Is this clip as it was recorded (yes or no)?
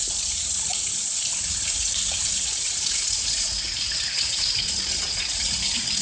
no